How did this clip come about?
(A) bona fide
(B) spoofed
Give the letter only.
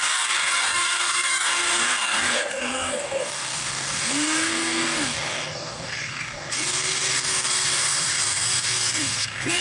B